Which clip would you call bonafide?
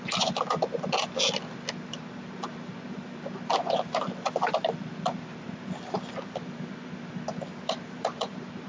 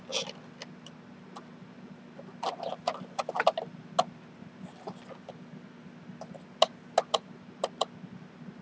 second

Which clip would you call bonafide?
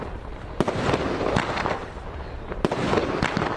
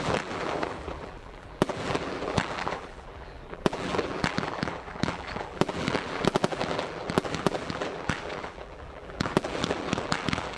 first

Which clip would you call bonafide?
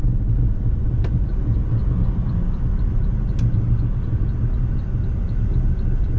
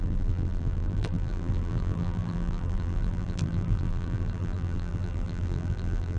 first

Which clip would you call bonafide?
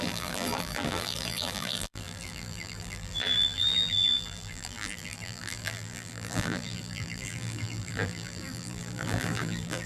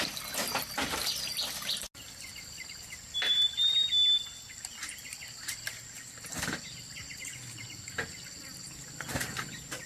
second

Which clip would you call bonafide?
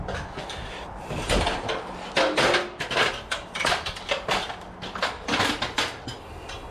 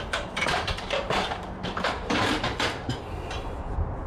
first